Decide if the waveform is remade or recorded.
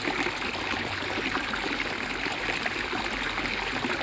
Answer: recorded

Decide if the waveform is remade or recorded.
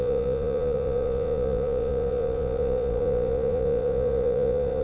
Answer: remade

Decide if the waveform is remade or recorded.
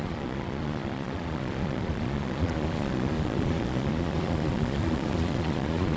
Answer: remade